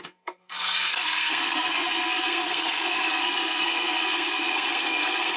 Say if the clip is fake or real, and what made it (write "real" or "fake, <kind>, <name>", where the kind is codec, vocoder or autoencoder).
fake, codec, SNAC